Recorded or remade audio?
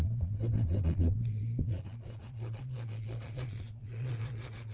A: remade